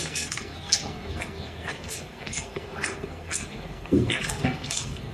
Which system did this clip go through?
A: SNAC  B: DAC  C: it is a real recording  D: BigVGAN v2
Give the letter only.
A